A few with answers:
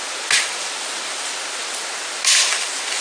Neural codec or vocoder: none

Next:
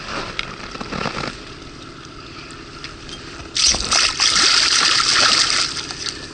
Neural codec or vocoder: none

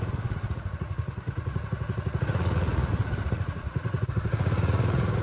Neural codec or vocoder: vocoder, Vocos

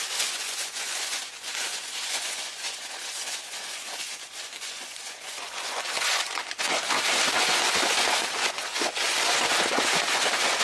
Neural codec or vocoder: vocoder, Vocos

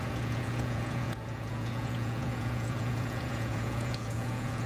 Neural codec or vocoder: vocoder, Vocos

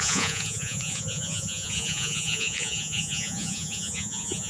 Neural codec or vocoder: vocoder, Vocos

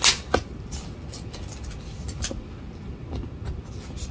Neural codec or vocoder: none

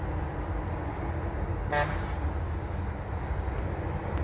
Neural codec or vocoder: none